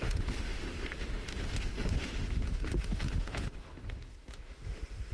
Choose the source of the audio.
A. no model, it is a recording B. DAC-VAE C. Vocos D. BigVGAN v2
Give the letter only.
B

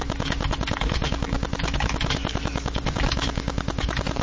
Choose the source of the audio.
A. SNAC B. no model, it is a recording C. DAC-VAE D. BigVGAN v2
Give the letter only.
C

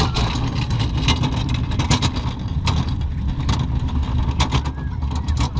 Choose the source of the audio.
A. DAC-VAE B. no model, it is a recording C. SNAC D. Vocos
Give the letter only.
B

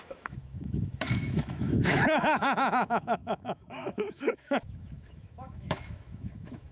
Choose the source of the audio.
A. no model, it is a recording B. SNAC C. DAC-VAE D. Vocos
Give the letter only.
C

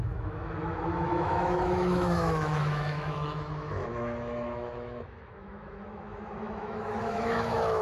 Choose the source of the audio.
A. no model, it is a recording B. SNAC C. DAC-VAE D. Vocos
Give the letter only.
C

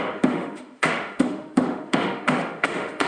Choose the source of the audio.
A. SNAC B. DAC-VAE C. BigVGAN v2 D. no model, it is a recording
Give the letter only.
B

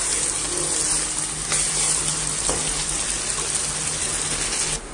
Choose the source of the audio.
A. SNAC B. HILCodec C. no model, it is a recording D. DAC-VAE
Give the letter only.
C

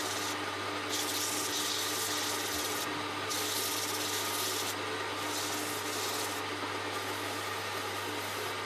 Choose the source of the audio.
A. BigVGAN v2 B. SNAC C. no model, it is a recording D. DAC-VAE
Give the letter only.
C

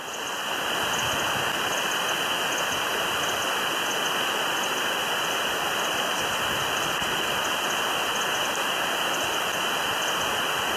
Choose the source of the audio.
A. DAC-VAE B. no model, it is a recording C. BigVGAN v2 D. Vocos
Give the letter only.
B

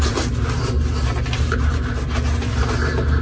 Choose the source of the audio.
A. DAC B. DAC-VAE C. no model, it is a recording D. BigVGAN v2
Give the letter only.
C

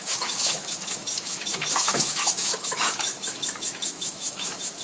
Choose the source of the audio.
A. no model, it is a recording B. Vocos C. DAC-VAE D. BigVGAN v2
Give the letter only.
C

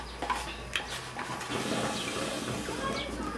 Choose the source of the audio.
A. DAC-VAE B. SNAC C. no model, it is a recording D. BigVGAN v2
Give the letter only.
C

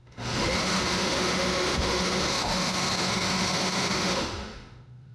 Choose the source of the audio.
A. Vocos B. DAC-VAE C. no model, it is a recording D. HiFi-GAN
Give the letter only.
B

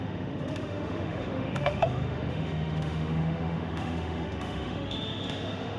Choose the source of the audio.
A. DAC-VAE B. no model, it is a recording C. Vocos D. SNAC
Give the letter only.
A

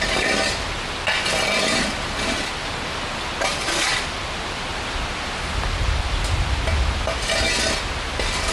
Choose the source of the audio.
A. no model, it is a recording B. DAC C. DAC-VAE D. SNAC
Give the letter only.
A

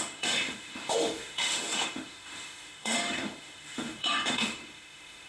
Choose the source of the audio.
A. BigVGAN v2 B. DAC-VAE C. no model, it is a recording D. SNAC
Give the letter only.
B